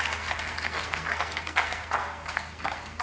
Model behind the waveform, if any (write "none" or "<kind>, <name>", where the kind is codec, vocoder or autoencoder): codec, SNAC